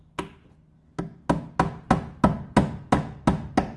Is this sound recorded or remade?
recorded